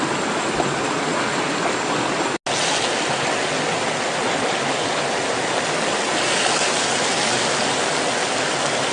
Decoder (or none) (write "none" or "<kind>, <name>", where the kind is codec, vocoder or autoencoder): none